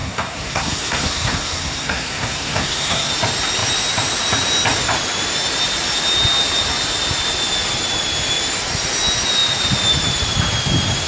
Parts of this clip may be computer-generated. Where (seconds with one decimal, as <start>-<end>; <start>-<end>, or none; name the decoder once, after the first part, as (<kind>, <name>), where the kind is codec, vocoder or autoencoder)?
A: 0.0-3.1 (codec, SNAC)